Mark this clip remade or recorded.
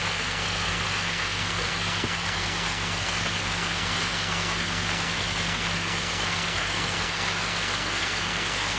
remade